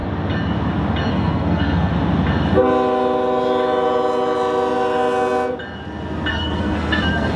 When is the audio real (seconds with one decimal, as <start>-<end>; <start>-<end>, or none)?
0.0-1.1; 1.9-6.3